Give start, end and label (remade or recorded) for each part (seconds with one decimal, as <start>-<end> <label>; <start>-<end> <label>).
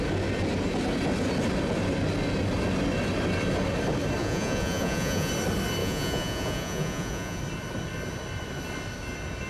0.0-4.2 recorded; 4.2-5.3 remade; 5.3-5.8 recorded; 5.8-7.4 remade; 7.4-9.5 recorded